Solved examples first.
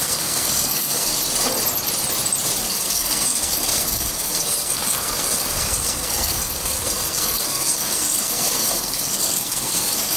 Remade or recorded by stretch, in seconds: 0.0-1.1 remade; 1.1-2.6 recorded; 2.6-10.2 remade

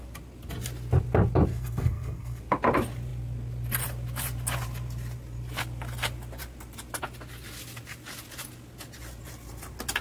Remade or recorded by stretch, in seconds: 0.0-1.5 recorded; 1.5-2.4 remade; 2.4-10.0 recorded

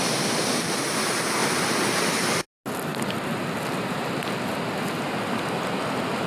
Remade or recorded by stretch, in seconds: 0.0-6.3 recorded